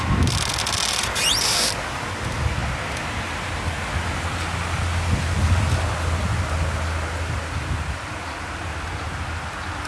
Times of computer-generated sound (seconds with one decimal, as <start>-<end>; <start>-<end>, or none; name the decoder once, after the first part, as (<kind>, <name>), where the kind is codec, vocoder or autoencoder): none